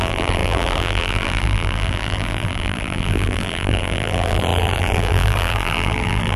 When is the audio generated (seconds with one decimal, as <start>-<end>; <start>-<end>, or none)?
0.0-6.4